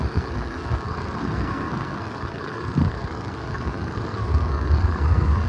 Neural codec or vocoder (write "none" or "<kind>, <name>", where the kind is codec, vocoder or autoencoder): codec, SNAC